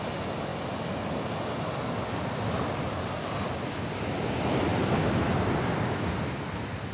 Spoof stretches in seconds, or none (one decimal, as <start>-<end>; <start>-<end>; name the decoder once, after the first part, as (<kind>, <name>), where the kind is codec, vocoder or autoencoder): none